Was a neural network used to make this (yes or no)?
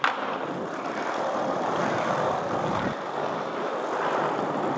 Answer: no